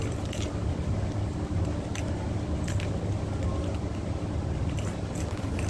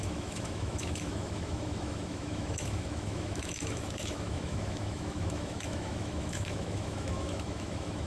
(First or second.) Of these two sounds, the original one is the first